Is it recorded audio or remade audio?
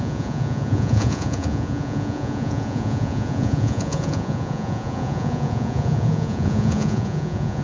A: remade